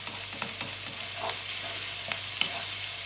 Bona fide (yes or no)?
yes